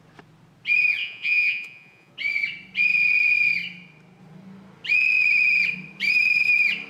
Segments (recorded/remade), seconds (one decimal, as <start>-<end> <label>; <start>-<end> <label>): 0.0-1.0 recorded; 1.0-2.1 remade; 2.1-6.9 recorded